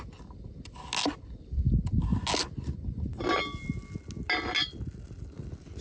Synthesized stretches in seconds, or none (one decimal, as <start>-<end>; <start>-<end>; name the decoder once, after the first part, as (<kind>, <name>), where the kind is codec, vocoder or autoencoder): none